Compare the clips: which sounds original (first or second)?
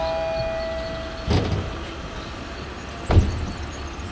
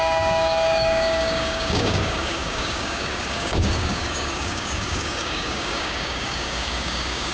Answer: first